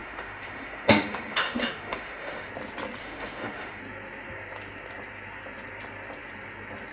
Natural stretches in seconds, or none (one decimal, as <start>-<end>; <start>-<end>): 2.5-3.0; 3.8-6.9